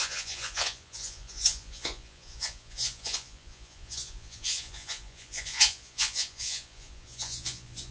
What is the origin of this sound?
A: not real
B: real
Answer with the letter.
A